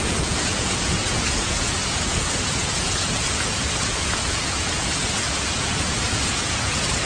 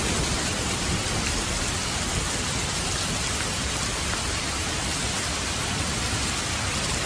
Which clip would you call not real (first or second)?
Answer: first